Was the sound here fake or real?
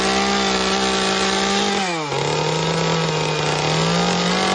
real